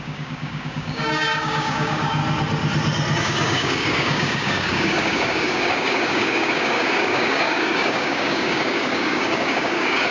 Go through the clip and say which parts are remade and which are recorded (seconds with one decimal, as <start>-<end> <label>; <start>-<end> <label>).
0.0-2.2 remade; 2.2-3.2 recorded; 3.2-10.1 remade